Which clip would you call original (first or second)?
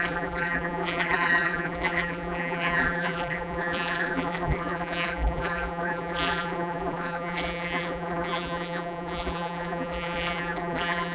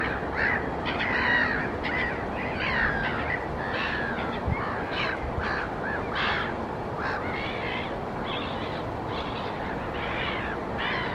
second